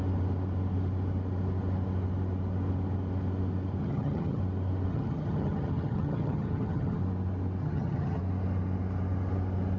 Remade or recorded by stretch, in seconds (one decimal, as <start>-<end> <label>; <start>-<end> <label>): 0.0-3.8 recorded; 3.8-4.4 remade; 4.4-4.9 recorded; 4.9-7.0 remade; 7.0-7.6 recorded; 7.6-8.2 remade; 8.2-9.8 recorded